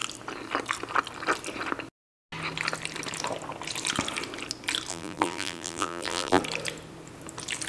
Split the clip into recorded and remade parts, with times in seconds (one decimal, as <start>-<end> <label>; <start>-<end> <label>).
0.0-4.9 recorded; 4.9-6.4 remade; 6.4-7.7 recorded